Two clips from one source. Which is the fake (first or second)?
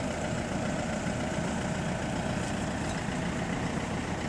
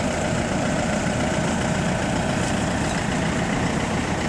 second